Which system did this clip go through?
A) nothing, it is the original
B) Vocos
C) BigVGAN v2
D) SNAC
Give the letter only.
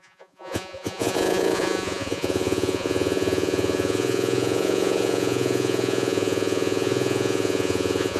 B